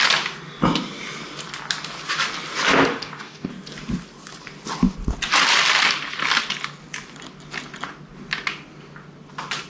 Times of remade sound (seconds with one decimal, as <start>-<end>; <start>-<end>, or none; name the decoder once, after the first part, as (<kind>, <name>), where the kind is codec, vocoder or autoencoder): 2.9-3.5 (codec, DAC)